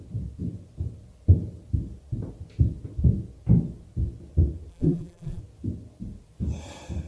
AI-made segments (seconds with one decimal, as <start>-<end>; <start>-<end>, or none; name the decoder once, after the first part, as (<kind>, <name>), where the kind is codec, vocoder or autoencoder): 4.7-5.4 (vocoder, BigVGAN v2)